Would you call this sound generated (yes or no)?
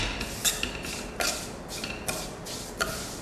no